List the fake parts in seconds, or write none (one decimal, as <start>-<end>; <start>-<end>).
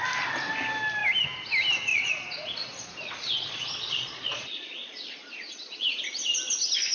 1.9-6.0